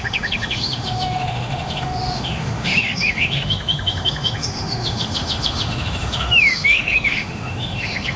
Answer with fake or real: fake